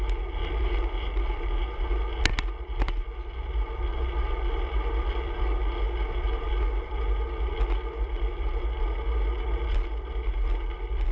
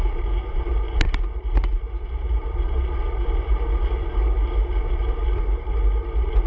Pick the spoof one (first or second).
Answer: second